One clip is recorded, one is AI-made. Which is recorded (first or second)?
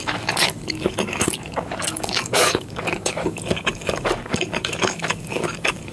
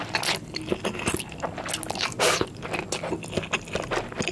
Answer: second